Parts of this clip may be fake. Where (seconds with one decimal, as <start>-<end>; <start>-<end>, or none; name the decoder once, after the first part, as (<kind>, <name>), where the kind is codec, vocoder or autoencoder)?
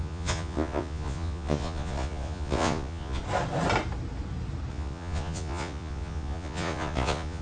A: 0.0-3.2 (vocoder, Vocos); 4.7-7.4